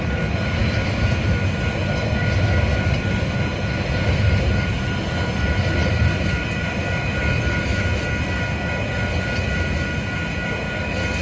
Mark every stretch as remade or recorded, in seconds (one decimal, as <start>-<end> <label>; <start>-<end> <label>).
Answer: 0.0-3.5 recorded; 3.5-6.8 remade; 6.8-11.2 recorded